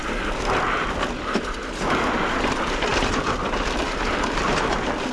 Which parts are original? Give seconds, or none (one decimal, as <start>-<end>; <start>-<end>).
0.0-2.5